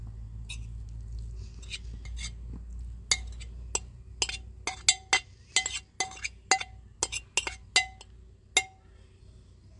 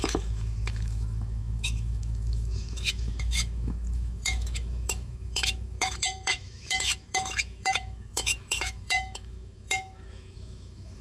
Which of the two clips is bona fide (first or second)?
first